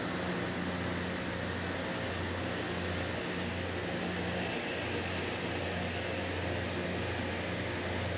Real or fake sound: real